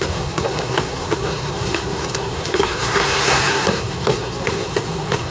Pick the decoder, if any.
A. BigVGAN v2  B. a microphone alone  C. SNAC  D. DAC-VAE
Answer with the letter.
C